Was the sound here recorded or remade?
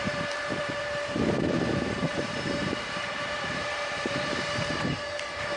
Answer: remade